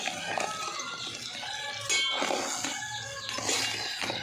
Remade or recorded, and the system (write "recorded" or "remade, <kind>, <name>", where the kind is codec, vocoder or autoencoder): recorded